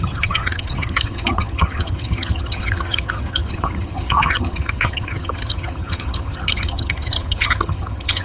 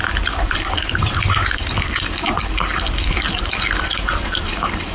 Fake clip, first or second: first